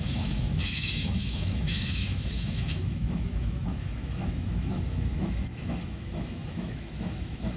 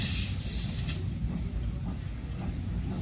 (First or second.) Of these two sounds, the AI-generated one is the first